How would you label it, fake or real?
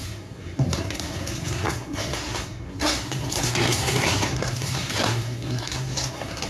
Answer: fake